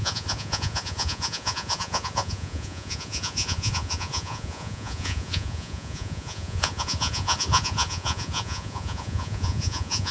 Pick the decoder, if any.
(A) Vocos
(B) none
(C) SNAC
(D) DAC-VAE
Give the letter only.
A